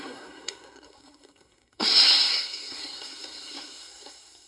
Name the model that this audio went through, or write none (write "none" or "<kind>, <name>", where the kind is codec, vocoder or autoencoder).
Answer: codec, SNAC